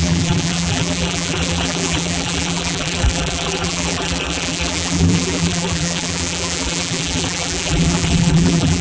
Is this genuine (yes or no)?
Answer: no